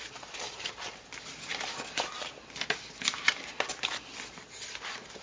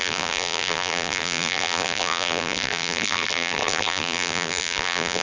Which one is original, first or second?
first